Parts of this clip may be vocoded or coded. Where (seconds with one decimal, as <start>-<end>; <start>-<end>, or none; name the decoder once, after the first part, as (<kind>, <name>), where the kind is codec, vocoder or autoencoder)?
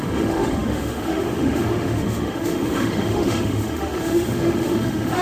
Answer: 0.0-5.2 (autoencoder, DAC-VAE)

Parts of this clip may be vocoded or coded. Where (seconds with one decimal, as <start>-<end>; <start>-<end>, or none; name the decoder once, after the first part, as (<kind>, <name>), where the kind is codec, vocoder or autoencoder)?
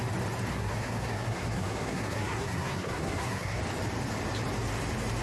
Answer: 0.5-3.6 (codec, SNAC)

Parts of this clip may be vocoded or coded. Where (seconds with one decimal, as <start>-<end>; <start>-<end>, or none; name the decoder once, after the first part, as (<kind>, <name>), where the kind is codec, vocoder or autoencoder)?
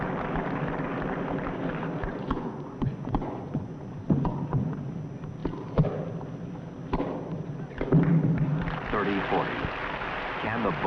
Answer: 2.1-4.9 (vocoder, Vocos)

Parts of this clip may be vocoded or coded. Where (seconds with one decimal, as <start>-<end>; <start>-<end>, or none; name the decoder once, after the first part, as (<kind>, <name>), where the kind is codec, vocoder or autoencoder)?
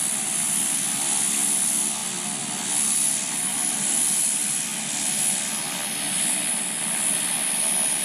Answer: 0.0-1.2 (vocoder, BigVGAN v2)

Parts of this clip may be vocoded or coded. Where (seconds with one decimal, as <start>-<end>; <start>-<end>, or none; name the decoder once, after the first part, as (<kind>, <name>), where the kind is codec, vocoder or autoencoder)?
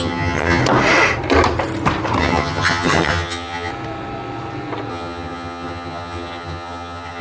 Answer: 0.0-0.6 (vocoder, HiFi-GAN); 2.2-3.7; 4.9-7.2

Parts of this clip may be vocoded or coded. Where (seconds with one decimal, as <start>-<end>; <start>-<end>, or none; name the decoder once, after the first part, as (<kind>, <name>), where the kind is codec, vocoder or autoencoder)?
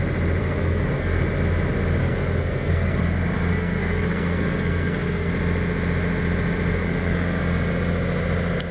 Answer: 0.4-1.2 (codec, SNAC); 2.0-3.0; 3.5-5.3; 6.7-7.4